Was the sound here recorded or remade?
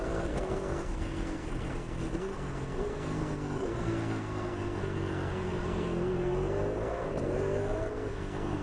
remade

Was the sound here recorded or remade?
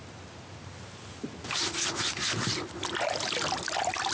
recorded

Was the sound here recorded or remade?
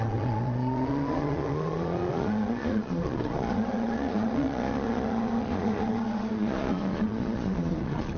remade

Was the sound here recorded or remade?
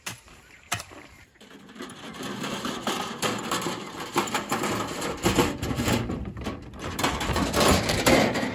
remade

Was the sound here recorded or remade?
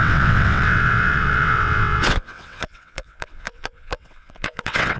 remade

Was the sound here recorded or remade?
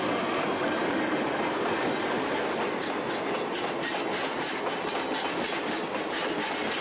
recorded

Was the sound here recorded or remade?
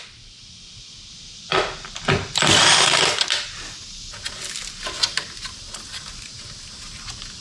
recorded